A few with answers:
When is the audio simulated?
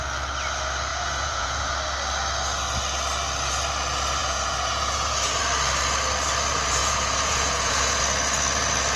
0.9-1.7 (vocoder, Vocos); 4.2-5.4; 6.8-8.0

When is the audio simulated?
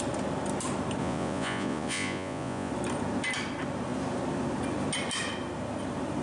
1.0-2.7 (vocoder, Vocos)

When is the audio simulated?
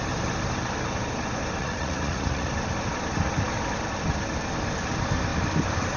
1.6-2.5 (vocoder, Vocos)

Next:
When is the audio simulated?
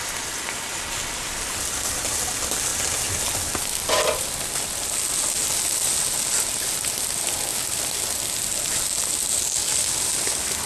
none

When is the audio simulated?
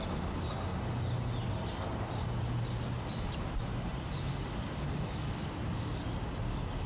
none